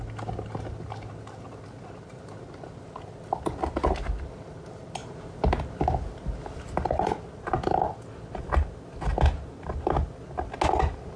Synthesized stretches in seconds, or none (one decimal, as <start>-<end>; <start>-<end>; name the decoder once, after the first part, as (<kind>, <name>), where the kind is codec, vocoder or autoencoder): none